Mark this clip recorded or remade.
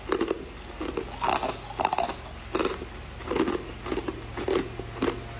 recorded